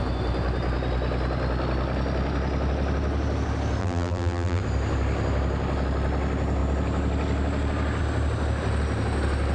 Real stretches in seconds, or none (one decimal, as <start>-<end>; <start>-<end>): 0.0-3.8; 4.6-9.5